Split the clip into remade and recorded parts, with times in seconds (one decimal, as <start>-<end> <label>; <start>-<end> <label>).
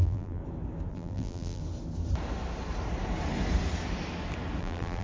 0.0-0.4 remade; 0.4-0.9 recorded; 0.9-1.6 remade; 1.6-4.6 recorded; 4.6-5.0 remade